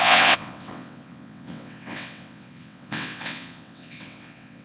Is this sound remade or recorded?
remade